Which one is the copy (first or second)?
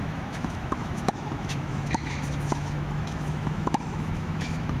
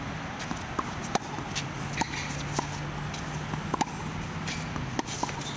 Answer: first